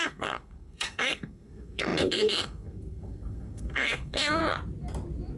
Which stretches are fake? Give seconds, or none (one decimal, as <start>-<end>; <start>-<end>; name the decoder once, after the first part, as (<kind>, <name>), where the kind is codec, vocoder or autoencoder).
0.0-4.4 (codec, SNAC)